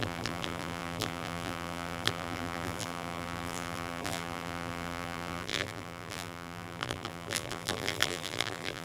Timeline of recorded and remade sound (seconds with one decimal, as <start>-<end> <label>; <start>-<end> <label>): 0.0-8.8 remade